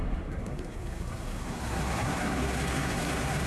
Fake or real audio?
fake